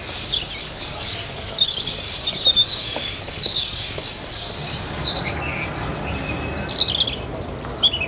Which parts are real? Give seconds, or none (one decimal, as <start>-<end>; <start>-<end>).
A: 0.0-0.6; 4.2-8.1